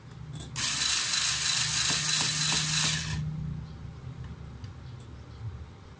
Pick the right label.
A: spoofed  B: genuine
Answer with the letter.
B